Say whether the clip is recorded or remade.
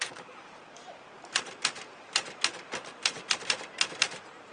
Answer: remade